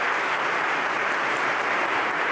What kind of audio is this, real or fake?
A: fake